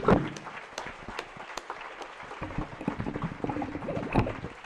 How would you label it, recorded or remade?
remade